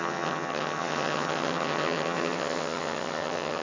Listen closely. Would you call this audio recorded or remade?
remade